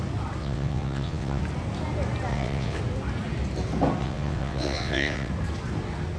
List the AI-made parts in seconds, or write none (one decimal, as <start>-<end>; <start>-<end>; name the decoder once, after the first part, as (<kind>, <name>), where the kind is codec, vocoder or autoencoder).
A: 0.4-1.4 (vocoder, WaveNeXt); 2.3-2.8; 4.0-5.3